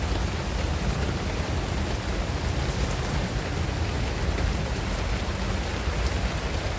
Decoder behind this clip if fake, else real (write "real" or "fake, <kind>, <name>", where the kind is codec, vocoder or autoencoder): real